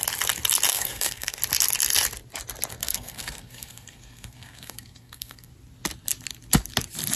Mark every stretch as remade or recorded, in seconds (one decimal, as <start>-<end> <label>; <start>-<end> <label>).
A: 0.0-0.7 recorded; 0.7-1.4 remade; 1.4-2.7 recorded; 2.7-5.5 remade; 5.5-7.2 recorded